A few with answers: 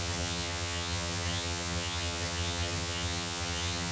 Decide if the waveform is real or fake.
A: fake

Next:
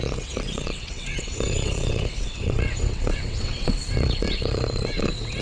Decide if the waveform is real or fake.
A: fake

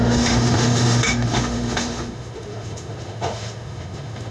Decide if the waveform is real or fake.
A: fake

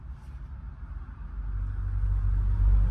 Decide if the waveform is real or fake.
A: real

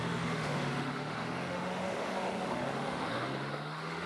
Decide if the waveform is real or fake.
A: fake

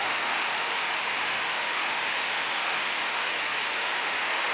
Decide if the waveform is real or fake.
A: fake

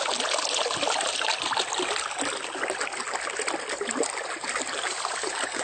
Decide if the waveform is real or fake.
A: real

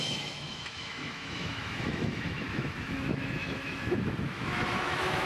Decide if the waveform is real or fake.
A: fake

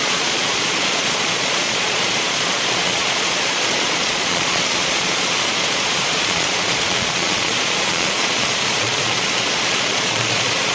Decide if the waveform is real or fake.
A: fake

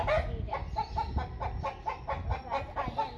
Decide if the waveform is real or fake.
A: real